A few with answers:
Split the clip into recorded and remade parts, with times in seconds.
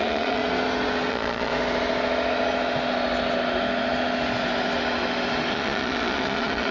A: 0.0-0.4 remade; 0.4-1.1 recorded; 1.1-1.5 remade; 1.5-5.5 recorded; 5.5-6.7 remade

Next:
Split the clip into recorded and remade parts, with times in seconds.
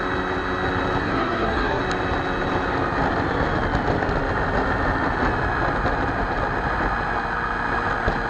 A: 0.0-1.0 recorded; 1.0-1.8 remade; 1.8-8.3 recorded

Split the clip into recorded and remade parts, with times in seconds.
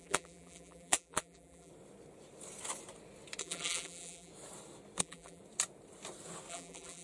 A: 0.0-1.7 remade; 1.7-3.4 recorded; 3.4-4.3 remade; 4.3-5.0 recorded; 5.0-5.4 remade; 5.4-6.5 recorded; 6.5-7.0 remade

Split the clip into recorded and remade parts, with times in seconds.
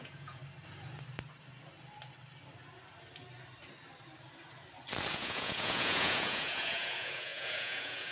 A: 0.0-0.4 remade; 0.4-5.1 recorded; 5.1-8.1 remade